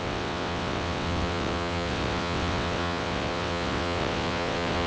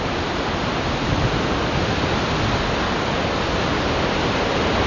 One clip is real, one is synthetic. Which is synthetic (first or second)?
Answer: first